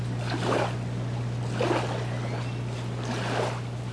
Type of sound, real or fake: real